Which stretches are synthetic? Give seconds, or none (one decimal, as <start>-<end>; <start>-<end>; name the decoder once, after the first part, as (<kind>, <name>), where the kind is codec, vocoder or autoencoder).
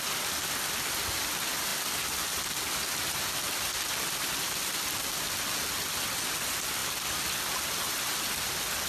none